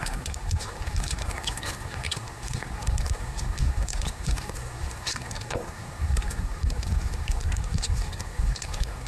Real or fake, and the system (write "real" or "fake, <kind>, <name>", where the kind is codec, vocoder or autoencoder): fake, codec, SNAC